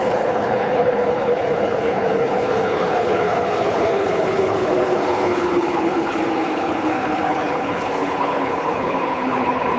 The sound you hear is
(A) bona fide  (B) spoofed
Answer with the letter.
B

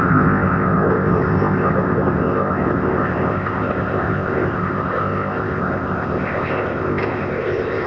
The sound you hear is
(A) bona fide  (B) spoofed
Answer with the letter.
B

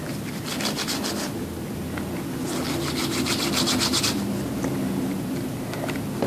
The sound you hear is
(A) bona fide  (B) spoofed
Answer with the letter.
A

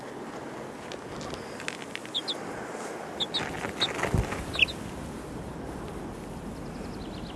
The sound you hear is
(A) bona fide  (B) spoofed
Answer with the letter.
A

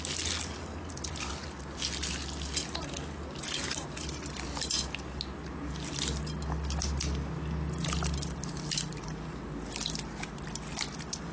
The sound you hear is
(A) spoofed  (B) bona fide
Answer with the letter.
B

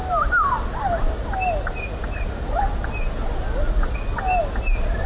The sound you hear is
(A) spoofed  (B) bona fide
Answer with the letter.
B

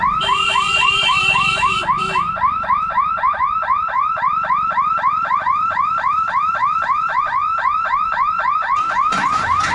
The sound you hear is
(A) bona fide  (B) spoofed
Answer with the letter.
B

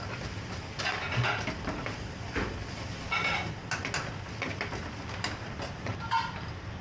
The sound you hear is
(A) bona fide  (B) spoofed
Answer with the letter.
A